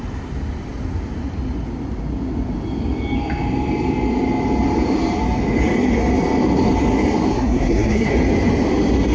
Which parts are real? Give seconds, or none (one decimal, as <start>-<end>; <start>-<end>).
0.0-7.3; 8.1-9.1